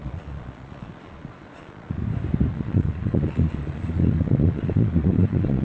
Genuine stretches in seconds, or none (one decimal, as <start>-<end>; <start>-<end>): 2.0-2.5